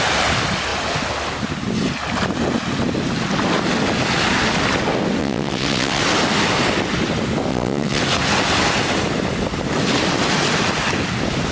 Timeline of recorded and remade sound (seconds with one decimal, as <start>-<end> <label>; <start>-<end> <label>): 0.0-5.2 recorded; 5.2-6.0 remade; 6.0-7.5 recorded; 7.5-8.0 remade; 8.0-11.5 recorded

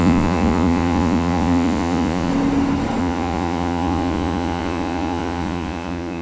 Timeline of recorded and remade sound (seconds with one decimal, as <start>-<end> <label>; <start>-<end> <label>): 0.0-2.3 remade; 2.3-3.0 recorded; 3.0-6.2 remade